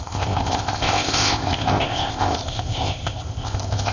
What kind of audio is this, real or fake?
fake